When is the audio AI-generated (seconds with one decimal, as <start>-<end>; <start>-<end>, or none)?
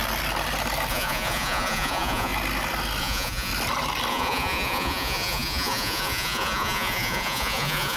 0.9-2.3; 3.0-3.5; 4.1-8.0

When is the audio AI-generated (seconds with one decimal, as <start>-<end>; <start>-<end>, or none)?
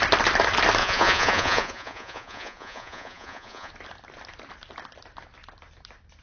0.8-3.7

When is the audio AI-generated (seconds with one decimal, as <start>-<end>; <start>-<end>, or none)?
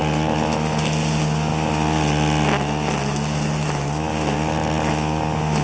none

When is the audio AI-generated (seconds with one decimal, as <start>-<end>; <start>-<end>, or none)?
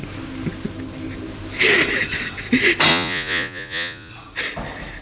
2.9-4.1